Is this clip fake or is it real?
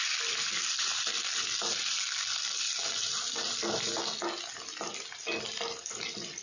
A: real